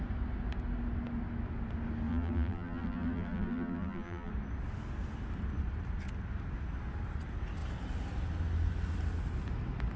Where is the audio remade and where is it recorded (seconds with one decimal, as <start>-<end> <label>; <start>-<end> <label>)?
0.0-2.1 recorded; 2.1-4.3 remade; 4.3-10.0 recorded